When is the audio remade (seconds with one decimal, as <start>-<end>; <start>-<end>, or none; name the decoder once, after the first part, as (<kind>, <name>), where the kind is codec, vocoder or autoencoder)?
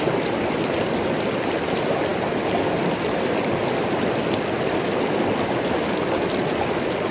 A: none